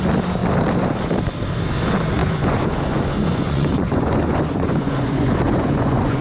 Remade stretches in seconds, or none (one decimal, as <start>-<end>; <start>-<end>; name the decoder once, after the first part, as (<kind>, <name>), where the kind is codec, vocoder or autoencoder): 2.2-6.2 (vocoder, Vocos)